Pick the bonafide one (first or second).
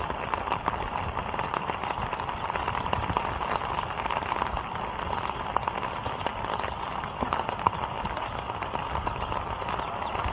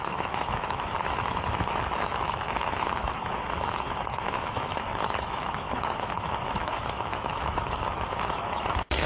first